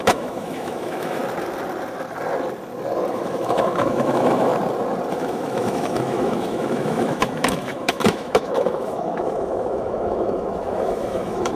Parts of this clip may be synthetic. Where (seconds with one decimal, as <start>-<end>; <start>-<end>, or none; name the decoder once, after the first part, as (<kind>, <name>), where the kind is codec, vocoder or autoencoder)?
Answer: 0.0-1.2 (autoencoder, DAC-VAE); 3.1-4.5; 5.1-11.6